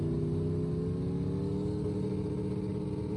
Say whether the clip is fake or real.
real